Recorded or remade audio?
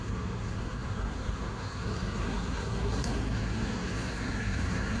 remade